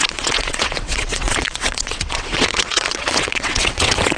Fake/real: fake